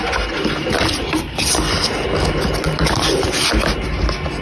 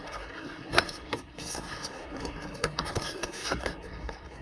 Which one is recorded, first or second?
first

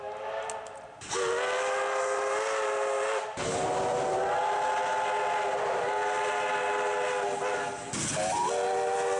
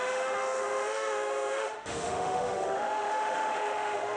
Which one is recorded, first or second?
first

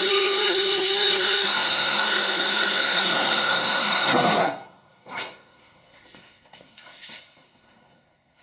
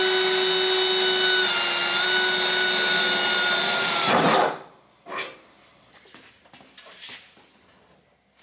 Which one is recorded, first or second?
second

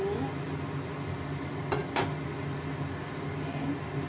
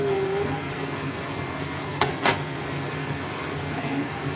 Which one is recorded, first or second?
first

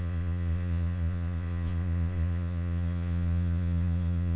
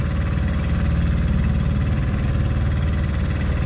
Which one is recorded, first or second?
second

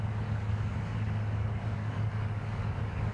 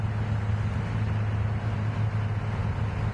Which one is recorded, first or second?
second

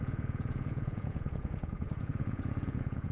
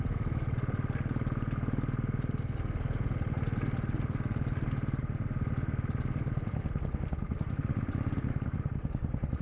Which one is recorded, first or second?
second